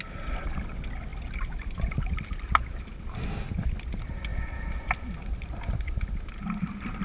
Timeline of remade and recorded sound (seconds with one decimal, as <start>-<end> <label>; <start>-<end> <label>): 0.0-7.0 recorded